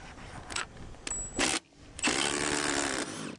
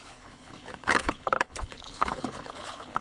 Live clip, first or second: first